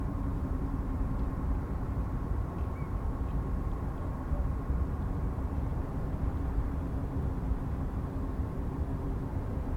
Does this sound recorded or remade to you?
remade